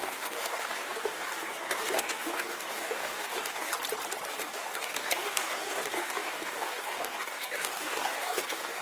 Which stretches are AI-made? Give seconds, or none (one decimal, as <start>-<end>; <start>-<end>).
0.0-3.7; 4.3-8.8